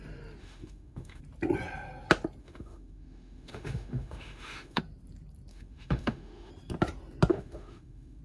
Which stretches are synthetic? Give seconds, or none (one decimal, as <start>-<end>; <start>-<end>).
0.4-1.2; 2.4-4.8; 5.5-6.5; 7.3-8.2